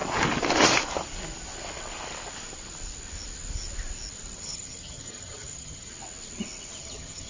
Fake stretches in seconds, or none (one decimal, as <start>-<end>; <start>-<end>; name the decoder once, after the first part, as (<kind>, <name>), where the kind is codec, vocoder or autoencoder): 4.4-5.9 (vocoder, HiFi-GAN); 6.8-7.3